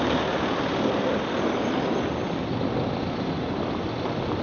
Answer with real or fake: real